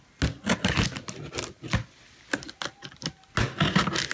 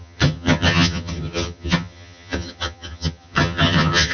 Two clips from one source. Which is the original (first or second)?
first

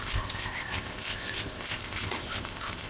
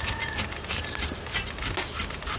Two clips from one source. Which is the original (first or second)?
second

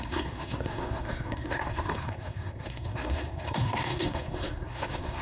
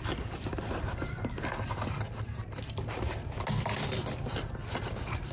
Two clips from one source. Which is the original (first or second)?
second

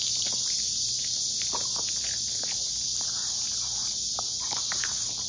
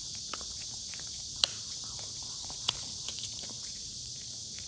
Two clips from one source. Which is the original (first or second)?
first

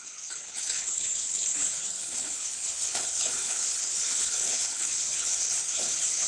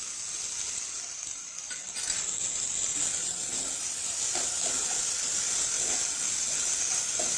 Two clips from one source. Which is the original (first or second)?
second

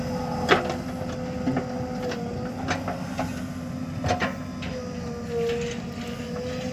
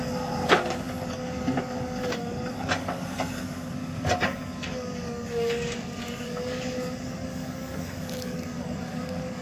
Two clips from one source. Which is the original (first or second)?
first